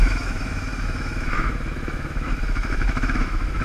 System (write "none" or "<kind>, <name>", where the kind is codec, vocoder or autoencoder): autoencoder, DAC-VAE